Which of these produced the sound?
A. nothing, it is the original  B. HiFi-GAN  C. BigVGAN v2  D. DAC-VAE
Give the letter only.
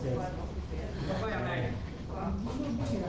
A